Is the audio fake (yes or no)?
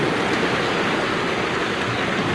no